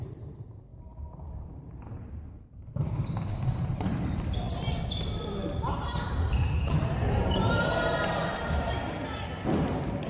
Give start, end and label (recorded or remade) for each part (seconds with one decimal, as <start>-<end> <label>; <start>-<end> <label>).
0.0-10.1 remade